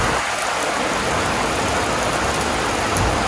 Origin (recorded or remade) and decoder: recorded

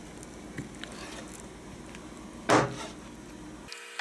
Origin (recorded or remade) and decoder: recorded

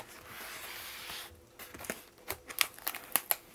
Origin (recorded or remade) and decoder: recorded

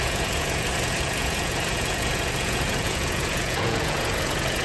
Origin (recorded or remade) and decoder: remade, vocoder, Vocos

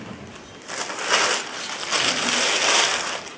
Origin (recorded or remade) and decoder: recorded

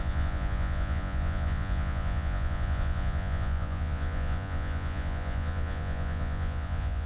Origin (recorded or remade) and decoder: remade, vocoder, Vocos